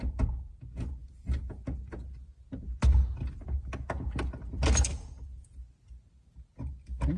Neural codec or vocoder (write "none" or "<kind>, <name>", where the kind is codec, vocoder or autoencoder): none